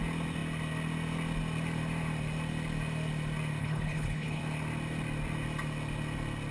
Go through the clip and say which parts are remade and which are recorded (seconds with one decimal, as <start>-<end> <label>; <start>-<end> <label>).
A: 0.0-3.6 recorded; 3.6-4.4 remade; 4.4-6.5 recorded